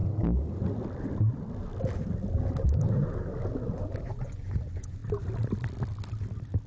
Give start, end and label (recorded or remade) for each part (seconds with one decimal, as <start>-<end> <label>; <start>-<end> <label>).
0.0-4.0 recorded; 4.0-5.0 remade; 5.0-6.7 recorded